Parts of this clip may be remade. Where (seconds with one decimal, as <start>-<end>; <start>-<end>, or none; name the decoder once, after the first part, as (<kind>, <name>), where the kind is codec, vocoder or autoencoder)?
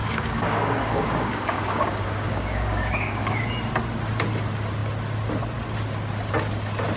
0.0-3.5 (codec, DAC)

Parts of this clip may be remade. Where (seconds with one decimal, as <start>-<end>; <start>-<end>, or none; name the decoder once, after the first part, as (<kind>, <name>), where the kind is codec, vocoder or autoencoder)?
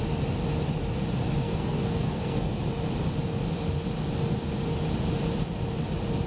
1.4-2.6 (codec, SNAC)